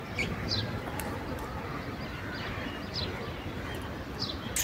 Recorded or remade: recorded